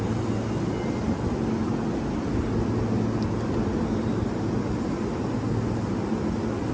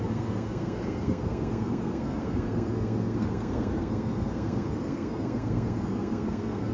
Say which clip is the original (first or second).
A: first